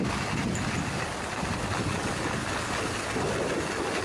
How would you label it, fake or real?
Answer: real